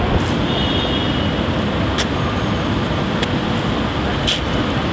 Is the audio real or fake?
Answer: real